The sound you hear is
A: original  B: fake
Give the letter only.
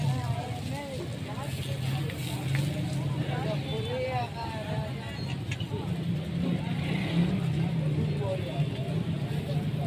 A